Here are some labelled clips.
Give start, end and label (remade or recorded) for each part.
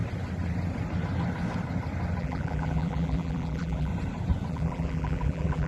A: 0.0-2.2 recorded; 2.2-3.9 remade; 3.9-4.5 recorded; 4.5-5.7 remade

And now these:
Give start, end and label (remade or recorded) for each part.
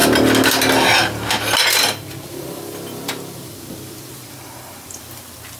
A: 0.0-1.3 recorded; 1.3-5.6 remade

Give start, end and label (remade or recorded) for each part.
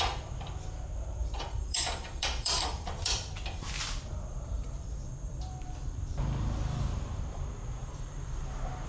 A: 0.0-1.2 recorded; 1.2-3.3 remade; 3.3-4.3 recorded; 4.3-5.6 remade; 5.6-7.8 recorded; 7.8-8.4 remade; 8.4-8.9 recorded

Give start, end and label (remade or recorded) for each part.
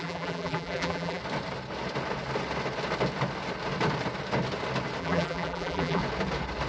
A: 0.0-1.2 remade; 1.2-5.0 recorded; 5.0-6.0 remade; 6.0-6.7 recorded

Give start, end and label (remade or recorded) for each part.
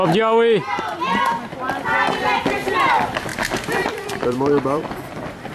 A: 0.0-3.3 recorded; 3.3-4.9 remade; 4.9-5.5 recorded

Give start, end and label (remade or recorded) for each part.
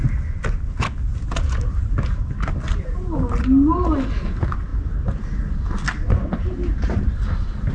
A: 0.0-1.1 recorded; 1.1-1.9 remade; 1.9-7.7 recorded